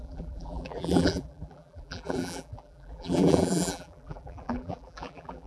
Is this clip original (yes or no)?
no